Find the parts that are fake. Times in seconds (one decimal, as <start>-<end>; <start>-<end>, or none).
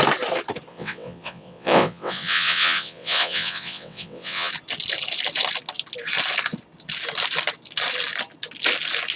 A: 0.7-4.5